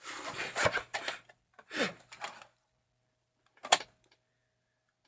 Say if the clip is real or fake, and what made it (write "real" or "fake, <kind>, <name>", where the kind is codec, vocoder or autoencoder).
real